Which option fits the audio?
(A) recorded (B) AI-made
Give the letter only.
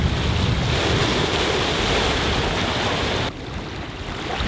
A